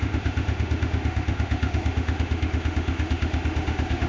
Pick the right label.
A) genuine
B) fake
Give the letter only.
B